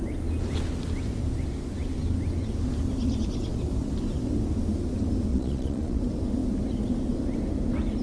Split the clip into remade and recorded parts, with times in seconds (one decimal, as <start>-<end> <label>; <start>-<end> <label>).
0.0-5.3 recorded; 5.3-6.0 remade; 6.0-8.0 recorded